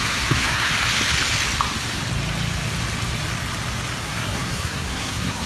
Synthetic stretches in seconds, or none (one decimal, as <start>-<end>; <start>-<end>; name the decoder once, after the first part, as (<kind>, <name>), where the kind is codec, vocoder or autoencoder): 0.0-0.7 (codec, SNAC); 4.0-5.5